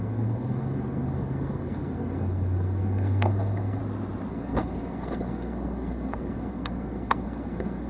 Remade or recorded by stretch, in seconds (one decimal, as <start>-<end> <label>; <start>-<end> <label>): 0.0-3.8 remade; 3.8-4.3 recorded; 4.3-7.9 remade